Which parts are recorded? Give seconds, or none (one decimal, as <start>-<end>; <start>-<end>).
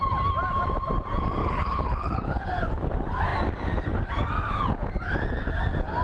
0.0-1.4; 2.5-6.0